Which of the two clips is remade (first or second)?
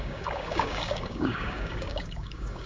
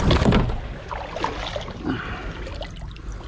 first